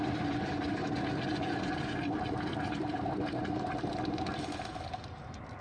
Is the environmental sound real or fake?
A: real